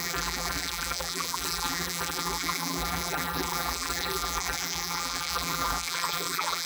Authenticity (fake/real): fake